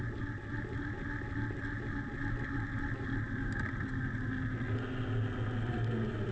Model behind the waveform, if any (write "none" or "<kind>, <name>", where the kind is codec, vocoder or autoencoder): none